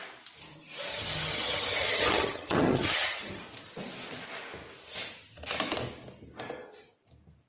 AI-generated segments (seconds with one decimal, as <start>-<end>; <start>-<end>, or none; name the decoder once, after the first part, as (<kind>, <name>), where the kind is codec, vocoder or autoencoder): 0.9-3.4 (vocoder, HiFi-GAN)